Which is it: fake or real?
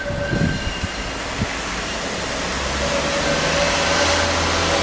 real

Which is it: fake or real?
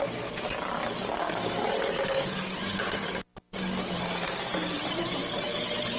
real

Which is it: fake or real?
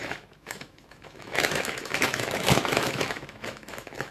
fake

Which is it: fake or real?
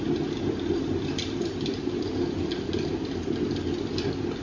real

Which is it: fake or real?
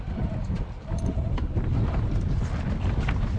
real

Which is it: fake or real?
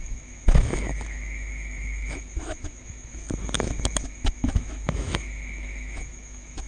fake